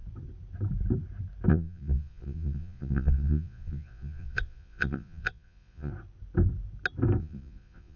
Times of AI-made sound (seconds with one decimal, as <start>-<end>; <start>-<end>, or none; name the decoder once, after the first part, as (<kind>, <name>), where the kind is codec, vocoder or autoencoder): 1.5-5.9 (vocoder, Vocos); 7.2-8.0